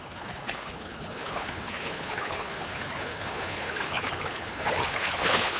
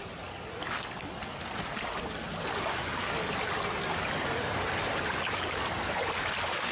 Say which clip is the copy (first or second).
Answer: first